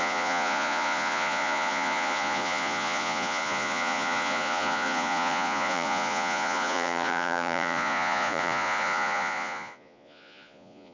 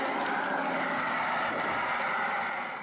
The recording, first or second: second